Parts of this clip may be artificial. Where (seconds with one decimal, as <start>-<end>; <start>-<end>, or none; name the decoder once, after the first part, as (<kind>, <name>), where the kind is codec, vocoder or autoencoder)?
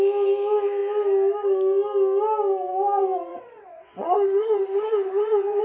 3.3-5.6 (vocoder, WaveNeXt)